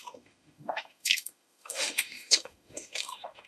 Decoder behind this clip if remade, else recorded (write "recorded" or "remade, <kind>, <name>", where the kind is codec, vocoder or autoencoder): remade, autoencoder, DAC-VAE